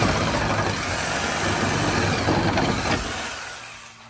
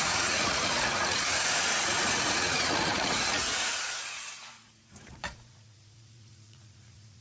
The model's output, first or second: second